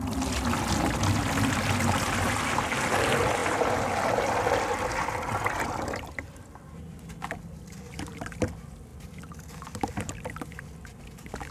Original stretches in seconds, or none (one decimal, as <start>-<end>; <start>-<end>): 0.0-11.5